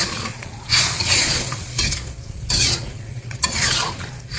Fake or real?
fake